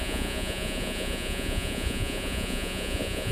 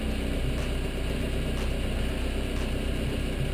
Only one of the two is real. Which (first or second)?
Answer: second